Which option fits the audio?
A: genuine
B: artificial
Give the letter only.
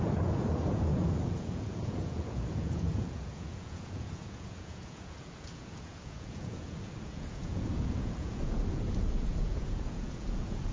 B